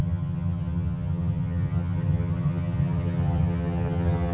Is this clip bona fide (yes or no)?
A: no